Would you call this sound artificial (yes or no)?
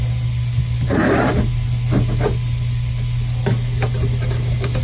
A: no